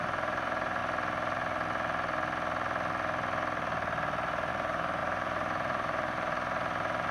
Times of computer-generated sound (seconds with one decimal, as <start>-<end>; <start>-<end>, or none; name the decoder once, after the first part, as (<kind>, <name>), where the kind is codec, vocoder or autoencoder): 0.0-0.8 (vocoder, BigVGAN v2); 4.5-7.1